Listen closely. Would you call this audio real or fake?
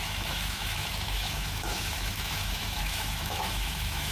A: fake